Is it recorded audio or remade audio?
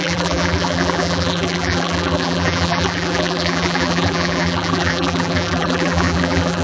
remade